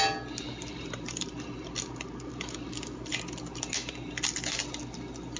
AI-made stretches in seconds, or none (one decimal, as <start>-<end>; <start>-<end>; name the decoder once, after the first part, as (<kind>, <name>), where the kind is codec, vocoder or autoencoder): 0.7-3.1 (vocoder, BigVGAN v2)